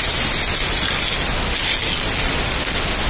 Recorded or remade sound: recorded